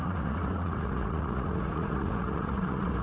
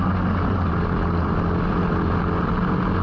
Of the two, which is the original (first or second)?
second